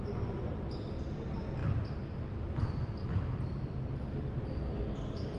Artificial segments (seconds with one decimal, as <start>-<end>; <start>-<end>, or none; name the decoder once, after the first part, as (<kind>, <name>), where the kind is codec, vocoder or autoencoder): 1.6-3.7 (vocoder, BigVGAN v2)